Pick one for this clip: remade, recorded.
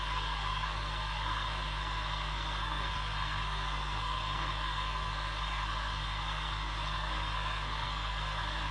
remade